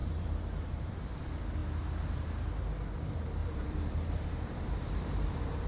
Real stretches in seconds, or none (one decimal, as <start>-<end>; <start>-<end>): 1.1-3.4